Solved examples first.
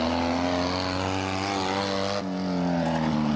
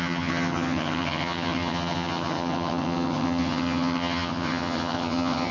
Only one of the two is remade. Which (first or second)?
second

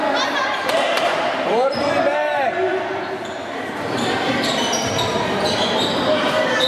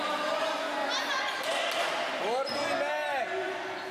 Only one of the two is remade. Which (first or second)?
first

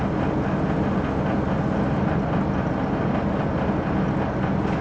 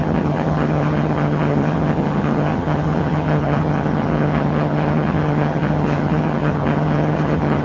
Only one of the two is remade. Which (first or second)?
second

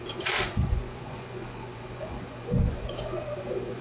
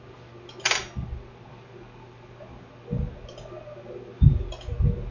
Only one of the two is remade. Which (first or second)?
first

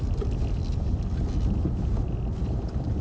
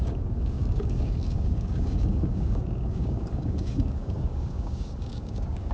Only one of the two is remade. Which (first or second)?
second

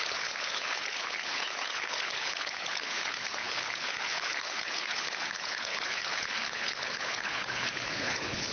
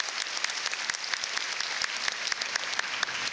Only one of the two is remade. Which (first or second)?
first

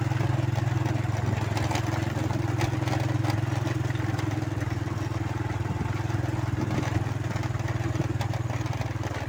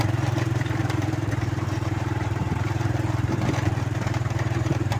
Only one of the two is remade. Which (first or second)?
second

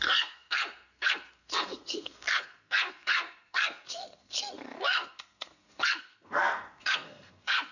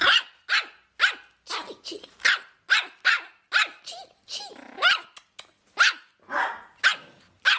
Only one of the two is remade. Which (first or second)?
first